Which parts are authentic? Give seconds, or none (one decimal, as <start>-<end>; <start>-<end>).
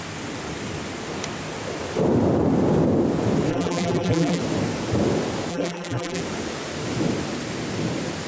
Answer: 0.0-3.5; 4.4-5.5; 6.2-8.3